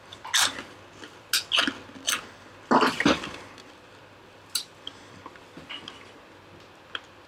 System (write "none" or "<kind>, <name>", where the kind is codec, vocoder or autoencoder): none